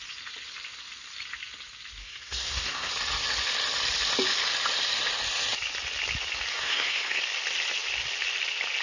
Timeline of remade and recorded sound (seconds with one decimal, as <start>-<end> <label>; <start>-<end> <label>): 0.0-2.0 recorded; 2.0-2.9 remade; 2.9-6.5 recorded; 6.5-7.2 remade; 7.2-8.8 recorded